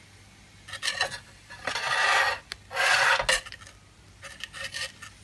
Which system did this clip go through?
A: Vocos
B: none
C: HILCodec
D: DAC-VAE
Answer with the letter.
B